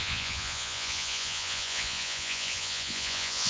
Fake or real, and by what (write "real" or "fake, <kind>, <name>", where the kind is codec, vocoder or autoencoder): fake, vocoder, Vocos